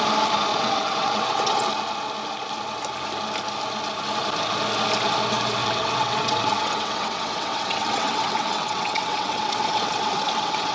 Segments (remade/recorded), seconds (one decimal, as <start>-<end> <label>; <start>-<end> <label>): 0.0-0.5 recorded; 0.5-1.7 remade; 1.7-5.6 recorded; 5.6-10.7 remade

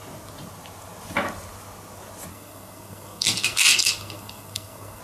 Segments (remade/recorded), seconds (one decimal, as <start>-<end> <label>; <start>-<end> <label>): 0.0-2.3 recorded; 2.3-5.0 remade

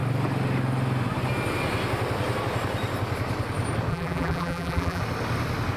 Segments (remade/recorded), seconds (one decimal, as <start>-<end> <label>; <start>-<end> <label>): 0.0-3.9 recorded; 3.9-5.0 remade; 5.0-5.8 recorded

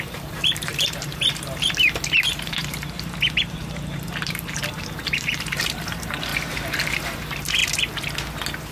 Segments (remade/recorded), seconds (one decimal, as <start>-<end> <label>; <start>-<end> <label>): 0.0-6.3 remade; 6.3-6.9 recorded; 6.9-7.6 remade; 7.6-8.7 recorded

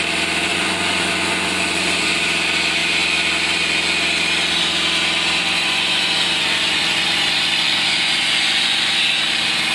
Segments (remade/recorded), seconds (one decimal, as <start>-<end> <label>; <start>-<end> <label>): 0.0-0.5 recorded; 0.5-2.1 remade; 2.1-5.4 recorded; 5.4-8.9 remade; 8.9-9.7 recorded

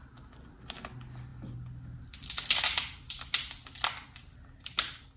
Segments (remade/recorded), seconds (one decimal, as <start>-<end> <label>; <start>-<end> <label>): 0.0-5.2 recorded

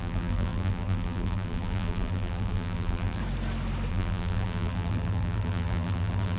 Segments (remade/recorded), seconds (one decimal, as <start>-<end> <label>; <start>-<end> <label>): 0.0-3.2 remade; 3.2-3.9 recorded; 3.9-6.4 remade

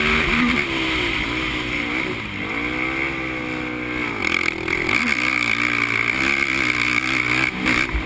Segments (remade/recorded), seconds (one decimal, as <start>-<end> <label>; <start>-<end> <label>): 0.0-8.1 recorded